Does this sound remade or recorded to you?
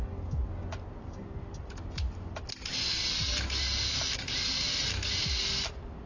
recorded